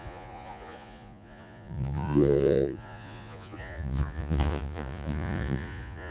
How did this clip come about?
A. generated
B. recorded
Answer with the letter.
A